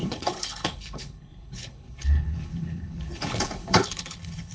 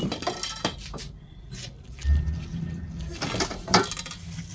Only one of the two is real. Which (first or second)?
second